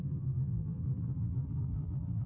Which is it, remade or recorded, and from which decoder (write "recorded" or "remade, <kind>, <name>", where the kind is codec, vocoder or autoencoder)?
remade, vocoder, BigVGAN v2